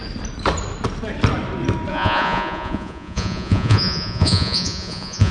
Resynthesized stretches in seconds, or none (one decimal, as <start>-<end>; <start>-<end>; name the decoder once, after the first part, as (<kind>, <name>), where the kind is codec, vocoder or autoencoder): 1.9-5.3 (vocoder, Vocos)